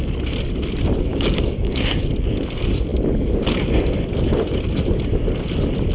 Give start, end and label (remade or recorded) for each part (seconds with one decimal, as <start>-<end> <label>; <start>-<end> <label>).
0.0-1.1 recorded; 1.1-2.1 remade; 2.1-5.9 recorded